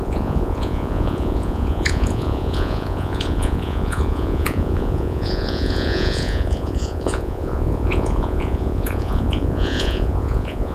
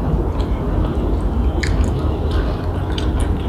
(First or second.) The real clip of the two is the second